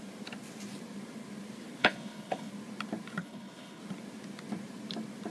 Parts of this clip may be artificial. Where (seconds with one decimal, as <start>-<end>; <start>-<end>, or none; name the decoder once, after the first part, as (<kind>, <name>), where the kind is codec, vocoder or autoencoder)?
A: 1.8-2.5 (codec, HILCodec); 3.2-3.8